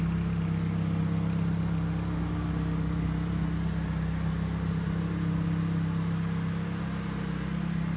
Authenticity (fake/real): real